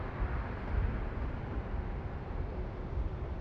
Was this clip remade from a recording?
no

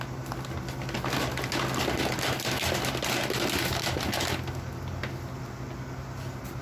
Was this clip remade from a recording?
no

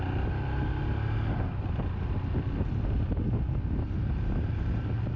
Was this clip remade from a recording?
no